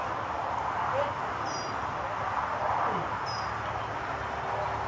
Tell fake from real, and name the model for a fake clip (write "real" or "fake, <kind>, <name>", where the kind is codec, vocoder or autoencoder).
real